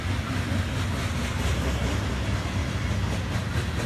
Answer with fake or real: real